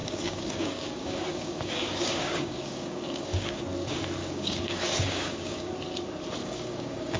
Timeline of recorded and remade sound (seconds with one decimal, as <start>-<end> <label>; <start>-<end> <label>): 0.0-3.6 remade; 3.6-4.2 recorded; 4.2-5.7 remade; 5.7-6.4 recorded; 6.4-7.2 remade